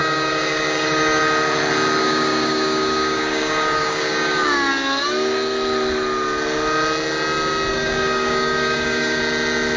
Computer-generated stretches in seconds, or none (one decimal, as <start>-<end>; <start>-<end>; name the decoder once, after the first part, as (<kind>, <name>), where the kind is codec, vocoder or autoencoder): 0.0-1.2 (codec, DAC); 2.0-4.7; 7.7-9.2